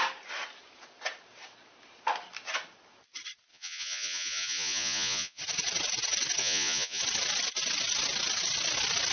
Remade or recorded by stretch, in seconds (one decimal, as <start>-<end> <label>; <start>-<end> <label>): 0.0-3.5 recorded; 3.5-5.4 remade; 5.4-6.4 recorded; 6.4-7.0 remade; 7.0-9.1 recorded